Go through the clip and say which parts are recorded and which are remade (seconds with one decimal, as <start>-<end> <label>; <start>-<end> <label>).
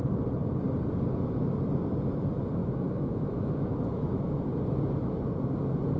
0.0-2.6 recorded; 2.6-4.4 remade; 4.4-6.0 recorded